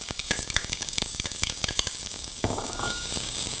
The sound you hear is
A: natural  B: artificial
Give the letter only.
B